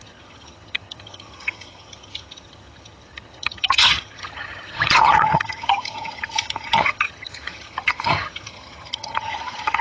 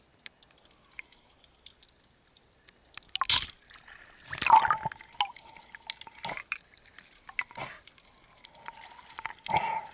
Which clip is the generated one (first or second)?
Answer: first